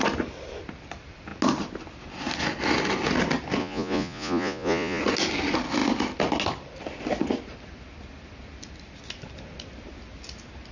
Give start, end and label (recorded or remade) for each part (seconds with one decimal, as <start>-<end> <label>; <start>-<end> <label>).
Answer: 0.0-3.6 recorded; 3.6-5.0 remade; 5.0-10.7 recorded

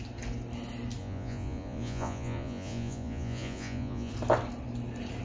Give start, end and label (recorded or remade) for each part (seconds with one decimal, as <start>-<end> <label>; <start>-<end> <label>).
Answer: 0.0-1.0 recorded; 1.0-4.1 remade; 4.1-5.2 recorded

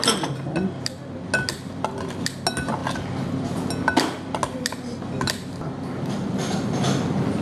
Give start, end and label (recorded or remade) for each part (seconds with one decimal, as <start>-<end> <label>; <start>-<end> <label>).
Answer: 0.0-7.4 recorded

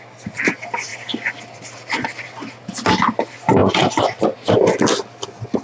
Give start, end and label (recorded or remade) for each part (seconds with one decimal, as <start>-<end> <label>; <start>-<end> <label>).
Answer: 0.0-5.6 recorded

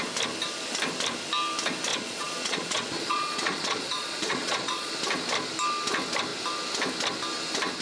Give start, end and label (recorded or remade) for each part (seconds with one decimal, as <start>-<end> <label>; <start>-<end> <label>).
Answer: 0.0-1.9 recorded; 1.9-4.9 remade; 4.9-7.8 recorded

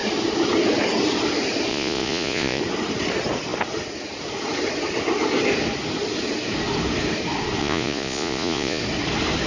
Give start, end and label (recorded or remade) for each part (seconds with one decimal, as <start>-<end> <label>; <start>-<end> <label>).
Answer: 0.0-1.7 recorded; 1.7-2.6 remade; 2.6-7.6 recorded; 7.6-8.8 remade; 8.8-9.5 recorded

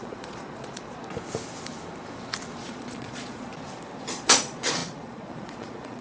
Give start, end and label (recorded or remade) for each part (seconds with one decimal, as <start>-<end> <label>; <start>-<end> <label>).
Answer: 0.0-1.0 remade; 1.0-2.6 recorded; 2.6-3.5 remade; 3.5-4.2 recorded; 4.2-6.0 remade

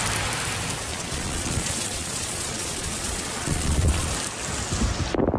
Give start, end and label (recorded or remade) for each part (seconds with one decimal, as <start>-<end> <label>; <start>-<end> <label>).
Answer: 0.0-0.9 recorded; 0.9-4.1 remade; 4.1-5.4 recorded